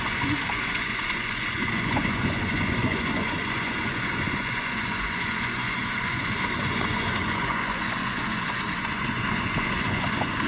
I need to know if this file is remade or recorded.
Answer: remade